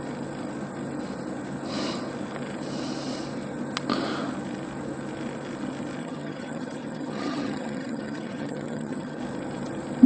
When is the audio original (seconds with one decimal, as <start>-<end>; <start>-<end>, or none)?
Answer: 0.0-6.0; 9.2-10.1